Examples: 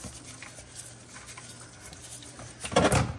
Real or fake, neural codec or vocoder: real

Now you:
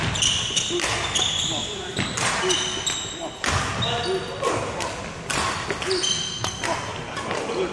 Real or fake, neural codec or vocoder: real